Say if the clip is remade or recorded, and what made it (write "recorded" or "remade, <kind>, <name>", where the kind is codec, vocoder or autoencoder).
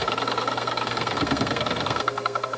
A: remade, codec, SNAC